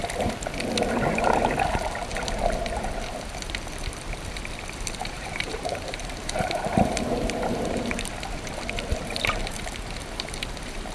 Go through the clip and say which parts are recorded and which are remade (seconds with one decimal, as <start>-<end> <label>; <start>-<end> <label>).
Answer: 0.0-5.0 recorded; 5.0-8.1 remade; 8.1-9.0 recorded; 9.0-9.6 remade; 9.6-10.9 recorded